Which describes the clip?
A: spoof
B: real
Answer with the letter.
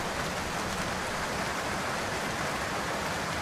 B